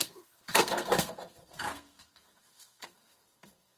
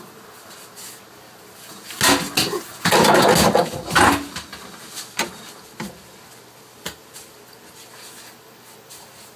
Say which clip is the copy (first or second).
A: first